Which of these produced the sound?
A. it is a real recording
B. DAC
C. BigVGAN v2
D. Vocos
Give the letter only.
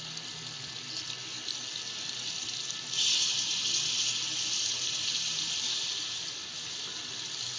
A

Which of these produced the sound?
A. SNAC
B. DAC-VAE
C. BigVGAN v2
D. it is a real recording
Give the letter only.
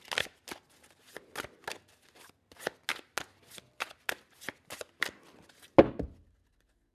D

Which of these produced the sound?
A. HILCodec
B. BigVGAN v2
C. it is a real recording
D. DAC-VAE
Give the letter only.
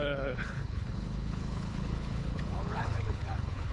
A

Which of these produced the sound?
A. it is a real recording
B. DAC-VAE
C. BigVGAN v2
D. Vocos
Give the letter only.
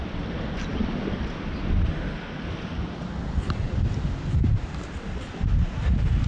A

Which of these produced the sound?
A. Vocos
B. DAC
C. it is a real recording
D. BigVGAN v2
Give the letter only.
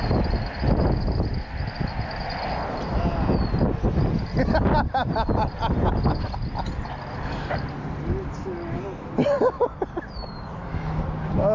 C